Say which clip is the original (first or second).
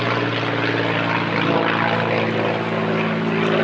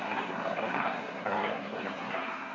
first